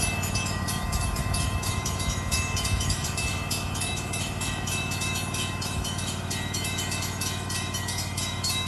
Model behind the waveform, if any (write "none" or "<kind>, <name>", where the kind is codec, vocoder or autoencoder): autoencoder, DAC-VAE